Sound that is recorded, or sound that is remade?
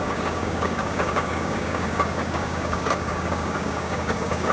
remade